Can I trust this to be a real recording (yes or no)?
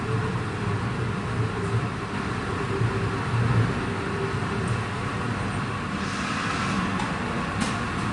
yes